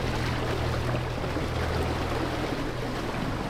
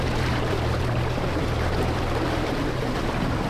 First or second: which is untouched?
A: first